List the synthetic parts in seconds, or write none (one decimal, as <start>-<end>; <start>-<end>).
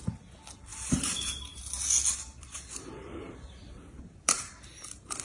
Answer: 0.7-1.6; 2.3-4.6